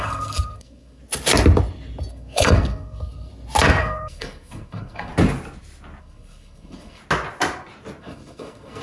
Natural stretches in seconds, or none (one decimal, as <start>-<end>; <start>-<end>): 1.0-2.1; 3.3-3.8; 5.1-6.0; 7.0-8.0